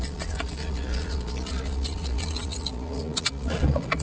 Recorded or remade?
remade